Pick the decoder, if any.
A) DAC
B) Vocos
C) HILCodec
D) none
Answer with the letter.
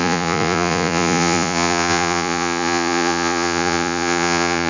B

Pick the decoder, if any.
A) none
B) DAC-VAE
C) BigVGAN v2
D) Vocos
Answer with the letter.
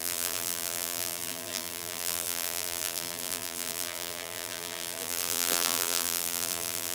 C